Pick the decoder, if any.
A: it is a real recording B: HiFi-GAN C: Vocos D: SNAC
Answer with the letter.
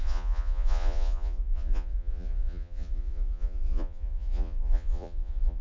C